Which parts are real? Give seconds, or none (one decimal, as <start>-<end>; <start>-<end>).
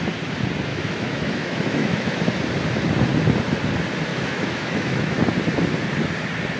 0.0-0.7; 2.2-4.1; 5.2-6.6